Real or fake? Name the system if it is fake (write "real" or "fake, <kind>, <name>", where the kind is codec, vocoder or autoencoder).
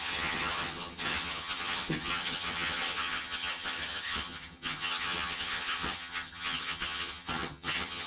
fake, vocoder, HiFi-GAN